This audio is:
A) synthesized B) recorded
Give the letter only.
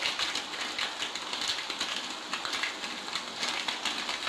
B